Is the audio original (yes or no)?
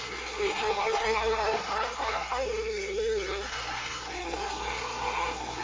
no